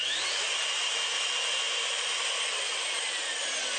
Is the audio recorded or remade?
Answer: recorded